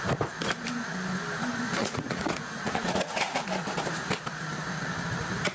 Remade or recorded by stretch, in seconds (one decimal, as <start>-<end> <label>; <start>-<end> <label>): 0.0-1.8 recorded; 1.8-3.4 remade; 3.4-5.5 recorded